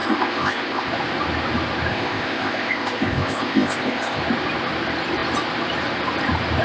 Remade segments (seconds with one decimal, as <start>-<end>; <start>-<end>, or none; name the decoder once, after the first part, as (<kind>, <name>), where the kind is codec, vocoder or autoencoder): 0.0-0.9 (codec, ZipCodec); 1.9-4.2